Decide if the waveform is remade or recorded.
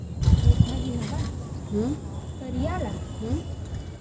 recorded